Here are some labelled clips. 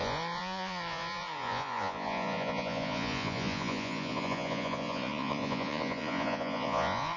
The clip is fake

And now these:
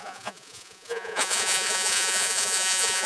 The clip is fake